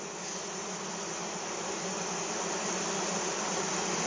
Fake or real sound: real